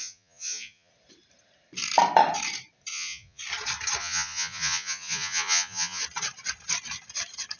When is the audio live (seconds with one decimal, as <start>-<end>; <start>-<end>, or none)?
0.9-2.9; 3.4-4.0; 6.0-7.6